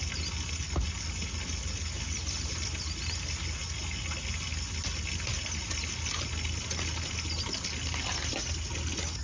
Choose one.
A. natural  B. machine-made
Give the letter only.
A